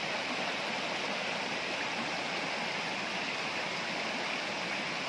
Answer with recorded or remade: recorded